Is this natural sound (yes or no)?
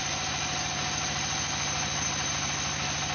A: yes